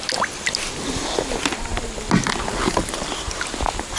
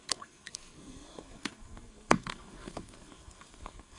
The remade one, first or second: second